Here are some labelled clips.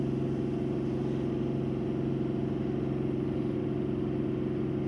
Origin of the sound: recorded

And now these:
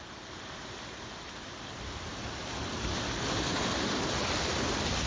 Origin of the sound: recorded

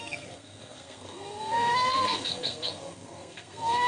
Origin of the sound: remade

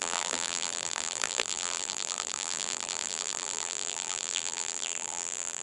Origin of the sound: remade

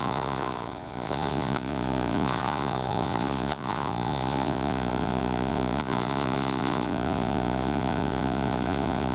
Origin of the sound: remade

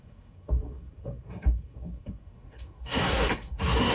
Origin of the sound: remade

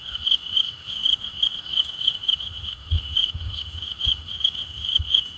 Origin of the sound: remade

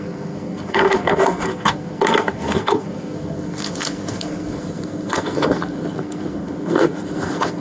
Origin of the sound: remade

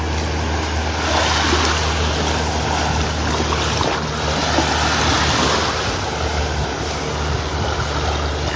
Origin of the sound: recorded